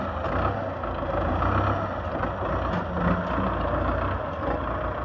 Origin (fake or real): real